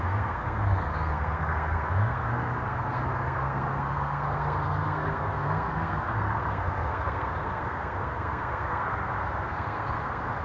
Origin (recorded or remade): remade